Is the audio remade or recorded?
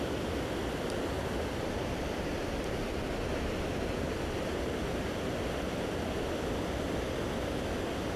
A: recorded